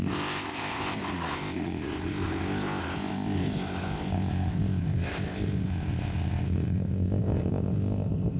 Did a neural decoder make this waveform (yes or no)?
yes